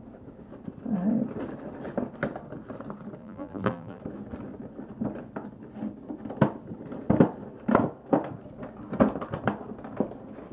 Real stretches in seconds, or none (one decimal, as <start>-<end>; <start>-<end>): 0.0-3.2; 4.0-10.5